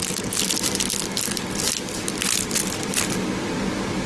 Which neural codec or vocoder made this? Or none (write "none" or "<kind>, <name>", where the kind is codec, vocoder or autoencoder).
none